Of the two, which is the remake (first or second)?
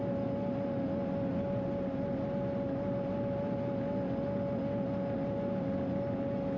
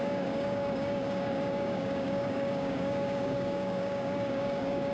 second